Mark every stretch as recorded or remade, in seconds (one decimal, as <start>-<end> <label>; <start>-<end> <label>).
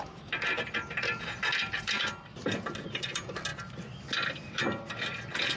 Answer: 0.0-5.6 recorded